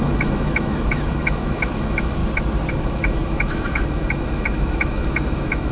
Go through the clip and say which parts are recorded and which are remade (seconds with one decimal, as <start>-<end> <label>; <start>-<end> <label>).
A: 0.0-2.2 remade; 2.2-2.7 recorded; 2.7-5.7 remade